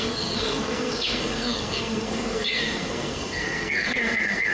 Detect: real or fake fake